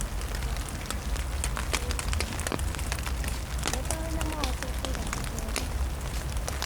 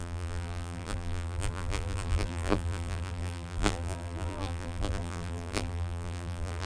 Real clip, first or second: first